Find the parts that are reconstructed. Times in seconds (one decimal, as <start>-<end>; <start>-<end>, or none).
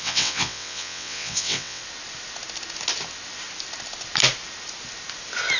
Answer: 0.0-1.8